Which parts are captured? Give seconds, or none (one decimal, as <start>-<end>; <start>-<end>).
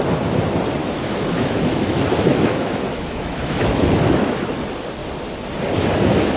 0.0-0.8; 4.6-6.4